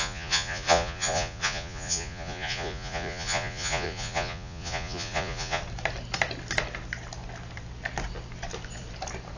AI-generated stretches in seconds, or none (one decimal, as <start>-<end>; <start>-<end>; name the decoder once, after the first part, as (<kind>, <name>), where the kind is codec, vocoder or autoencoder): 0.0-5.6 (vocoder, Vocos)